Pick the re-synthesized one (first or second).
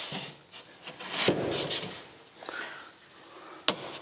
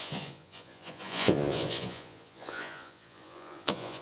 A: second